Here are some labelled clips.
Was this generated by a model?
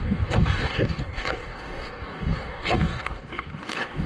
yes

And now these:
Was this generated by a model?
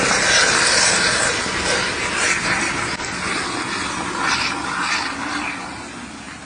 no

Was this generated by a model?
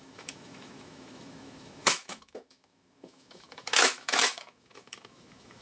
yes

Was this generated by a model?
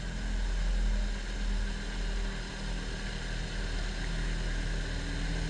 no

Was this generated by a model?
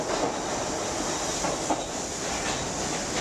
no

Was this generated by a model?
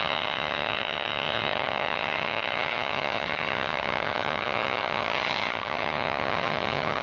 yes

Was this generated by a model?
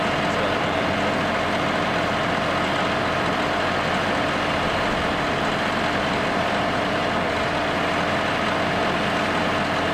no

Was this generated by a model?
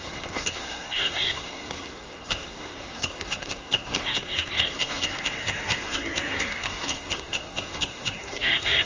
yes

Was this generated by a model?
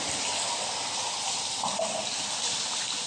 no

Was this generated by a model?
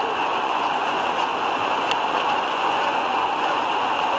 yes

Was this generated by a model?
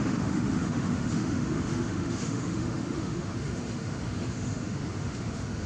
yes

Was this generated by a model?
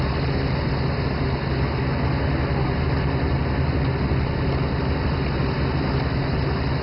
no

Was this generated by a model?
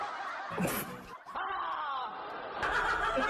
no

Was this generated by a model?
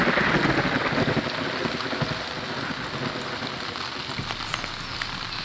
no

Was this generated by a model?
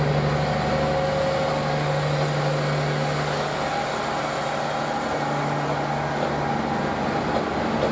no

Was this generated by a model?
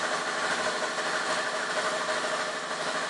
no